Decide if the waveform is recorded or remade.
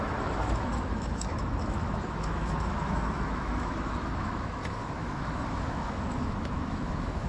remade